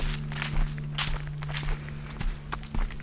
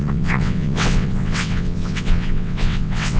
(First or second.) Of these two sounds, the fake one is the second